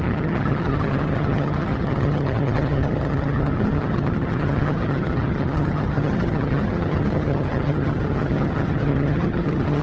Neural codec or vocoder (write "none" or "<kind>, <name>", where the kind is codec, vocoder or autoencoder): vocoder, HiFi-GAN